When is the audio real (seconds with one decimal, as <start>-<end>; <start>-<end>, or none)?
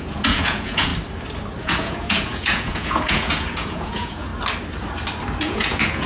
0.9-1.6; 4.3-5.4